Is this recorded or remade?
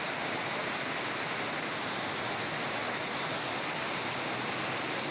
recorded